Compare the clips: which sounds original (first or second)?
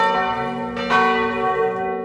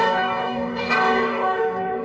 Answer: first